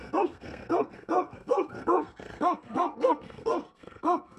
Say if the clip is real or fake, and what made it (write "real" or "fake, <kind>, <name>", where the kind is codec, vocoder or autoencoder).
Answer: fake, codec, SNAC